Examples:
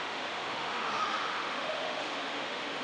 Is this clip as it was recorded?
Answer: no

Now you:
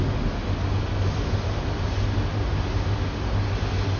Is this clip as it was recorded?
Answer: yes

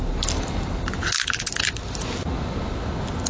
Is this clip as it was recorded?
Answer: yes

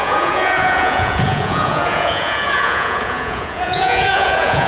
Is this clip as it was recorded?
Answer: no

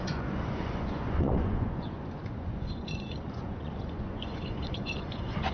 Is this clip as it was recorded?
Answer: no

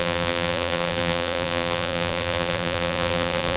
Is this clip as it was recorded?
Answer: no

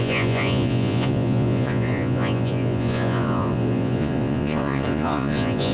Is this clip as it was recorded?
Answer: no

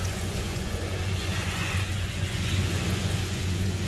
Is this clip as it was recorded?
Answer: no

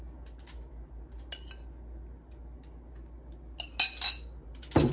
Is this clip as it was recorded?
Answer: yes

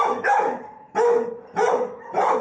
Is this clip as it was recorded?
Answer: no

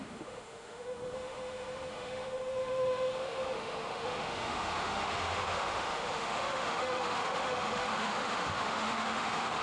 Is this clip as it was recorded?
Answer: no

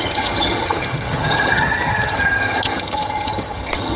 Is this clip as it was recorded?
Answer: no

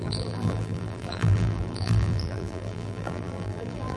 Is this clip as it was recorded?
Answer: no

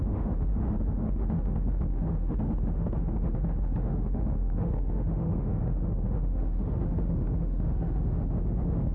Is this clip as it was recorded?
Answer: no